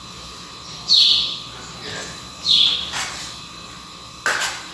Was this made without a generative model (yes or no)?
yes